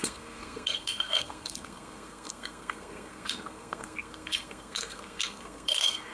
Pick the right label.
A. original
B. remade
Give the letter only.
B